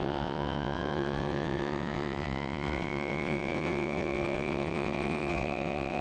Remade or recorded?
remade